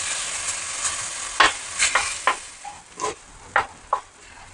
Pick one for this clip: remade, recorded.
recorded